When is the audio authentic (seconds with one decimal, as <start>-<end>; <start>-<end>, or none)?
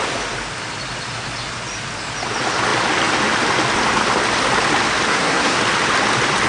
0.0-5.1; 5.6-6.5